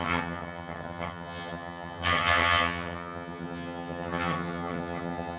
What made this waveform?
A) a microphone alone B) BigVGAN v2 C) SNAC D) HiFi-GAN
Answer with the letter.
D